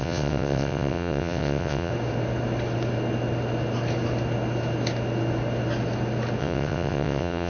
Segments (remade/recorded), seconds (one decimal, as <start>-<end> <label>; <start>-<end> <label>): 0.0-1.9 remade; 1.9-6.4 recorded; 6.4-7.5 remade